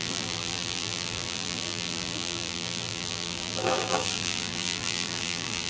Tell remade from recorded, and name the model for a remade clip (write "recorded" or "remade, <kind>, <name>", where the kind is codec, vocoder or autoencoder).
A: remade, vocoder, BigVGAN v2